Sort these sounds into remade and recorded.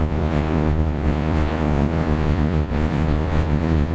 remade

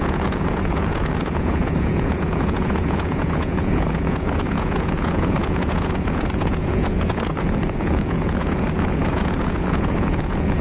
remade